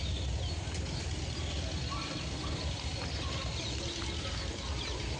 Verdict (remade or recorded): recorded